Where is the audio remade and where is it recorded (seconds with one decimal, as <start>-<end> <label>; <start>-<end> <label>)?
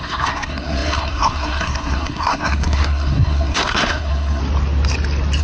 0.0-4.4 remade; 4.4-5.4 recorded